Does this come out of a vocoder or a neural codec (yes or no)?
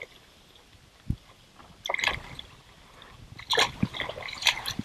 no